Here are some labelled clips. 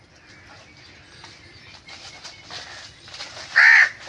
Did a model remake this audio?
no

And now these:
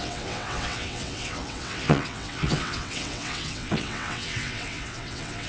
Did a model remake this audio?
yes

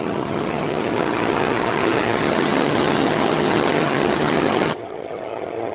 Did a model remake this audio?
yes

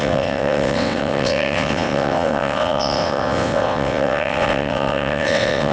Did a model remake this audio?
yes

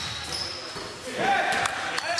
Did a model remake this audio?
no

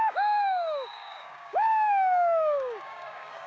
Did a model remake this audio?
yes